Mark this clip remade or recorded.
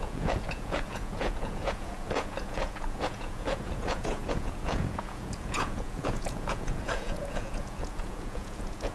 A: remade